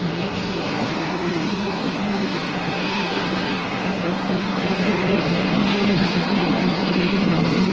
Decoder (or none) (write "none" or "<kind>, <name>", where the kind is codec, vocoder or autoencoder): codec, SNAC